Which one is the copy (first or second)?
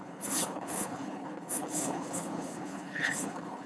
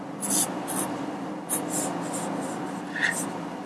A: first